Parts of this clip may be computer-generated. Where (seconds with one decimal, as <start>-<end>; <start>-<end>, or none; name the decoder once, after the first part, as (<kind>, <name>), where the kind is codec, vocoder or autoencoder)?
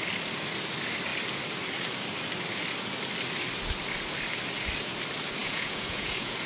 5.4-6.5 (vocoder, Vocos)